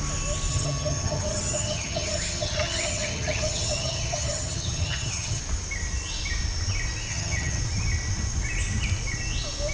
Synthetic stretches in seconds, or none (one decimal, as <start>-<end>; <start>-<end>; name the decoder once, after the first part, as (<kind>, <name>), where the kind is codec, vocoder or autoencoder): 0.5-5.4 (vocoder, HiFi-GAN); 7.1-7.6